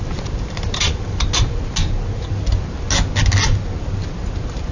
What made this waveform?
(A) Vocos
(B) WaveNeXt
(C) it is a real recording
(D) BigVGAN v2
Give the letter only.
C